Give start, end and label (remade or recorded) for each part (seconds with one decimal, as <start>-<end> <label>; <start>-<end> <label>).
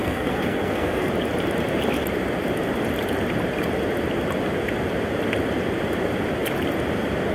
0.0-1.1 remade; 1.1-7.3 recorded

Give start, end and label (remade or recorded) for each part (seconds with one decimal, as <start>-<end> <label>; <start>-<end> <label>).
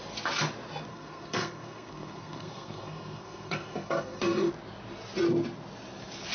0.0-0.9 recorded; 0.9-4.5 remade; 4.5-6.3 recorded